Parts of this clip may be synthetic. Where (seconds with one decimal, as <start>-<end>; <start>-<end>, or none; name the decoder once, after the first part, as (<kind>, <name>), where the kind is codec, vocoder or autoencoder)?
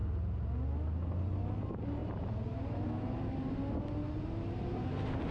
2.0-3.3 (vocoder, BigVGAN v2)